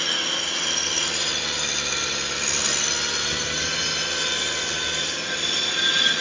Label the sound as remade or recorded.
recorded